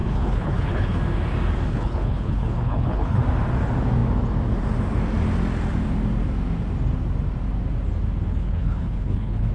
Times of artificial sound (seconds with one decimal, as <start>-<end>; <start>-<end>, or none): 0.0-1.0; 1.7-3.2; 8.3-9.5